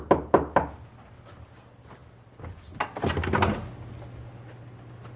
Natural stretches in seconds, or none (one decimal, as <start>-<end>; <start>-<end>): 0.0-5.2